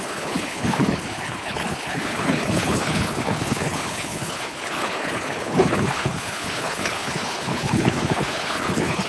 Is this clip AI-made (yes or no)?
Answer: yes